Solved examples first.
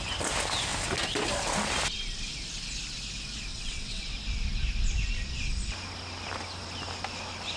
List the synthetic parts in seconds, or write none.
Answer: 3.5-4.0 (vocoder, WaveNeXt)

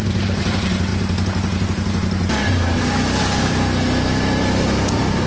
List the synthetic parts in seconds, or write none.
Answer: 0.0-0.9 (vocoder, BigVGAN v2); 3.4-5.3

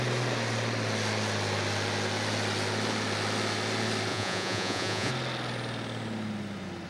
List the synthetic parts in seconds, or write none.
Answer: 4.1-5.1 (vocoder, Vocos)

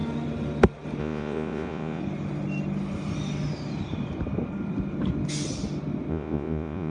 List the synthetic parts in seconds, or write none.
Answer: 1.0-2.0 (vocoder, Vocos); 6.1-6.9